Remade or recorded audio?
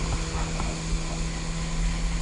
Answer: recorded